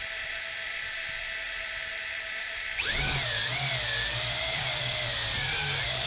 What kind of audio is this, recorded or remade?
remade